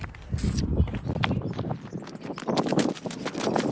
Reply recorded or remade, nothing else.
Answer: recorded